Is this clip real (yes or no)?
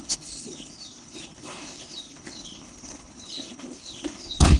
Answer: no